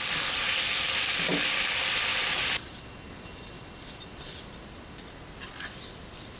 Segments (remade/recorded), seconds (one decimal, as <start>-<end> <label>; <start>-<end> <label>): 0.0-2.1 recorded; 2.1-2.6 remade; 2.6-6.4 recorded